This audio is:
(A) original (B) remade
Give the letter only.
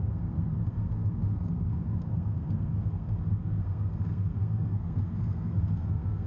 B